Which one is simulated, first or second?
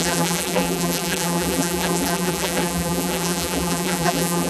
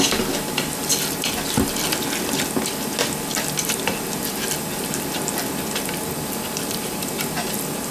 first